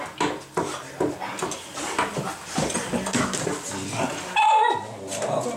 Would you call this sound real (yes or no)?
yes